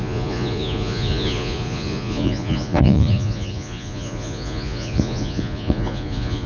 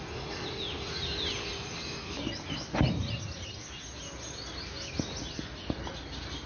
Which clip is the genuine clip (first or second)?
second